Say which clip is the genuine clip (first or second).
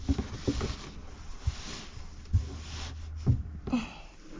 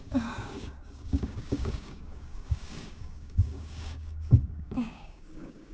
first